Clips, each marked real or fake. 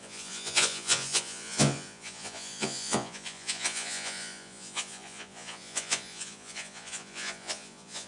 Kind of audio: fake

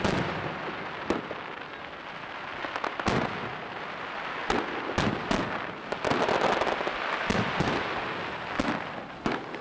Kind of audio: real